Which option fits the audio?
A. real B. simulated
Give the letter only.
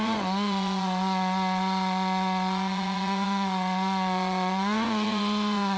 B